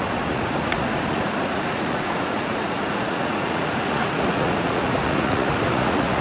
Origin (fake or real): fake